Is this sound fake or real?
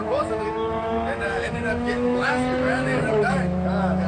fake